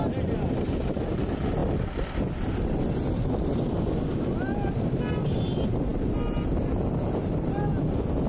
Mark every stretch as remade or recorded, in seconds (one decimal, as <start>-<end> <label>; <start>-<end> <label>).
0.0-8.3 recorded